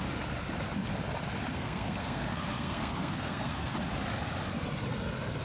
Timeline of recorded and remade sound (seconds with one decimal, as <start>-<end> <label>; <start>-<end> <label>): 0.0-1.5 recorded; 1.5-3.7 remade; 3.7-5.4 recorded